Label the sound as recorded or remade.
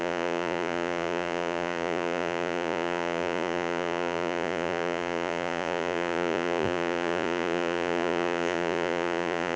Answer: remade